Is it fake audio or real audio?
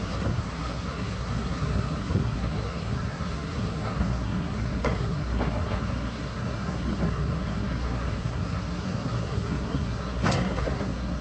fake